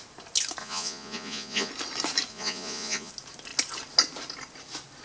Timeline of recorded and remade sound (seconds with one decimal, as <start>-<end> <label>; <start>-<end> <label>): 0.0-0.6 recorded; 0.6-1.7 remade; 1.7-2.3 recorded; 2.3-3.1 remade; 3.1-5.0 recorded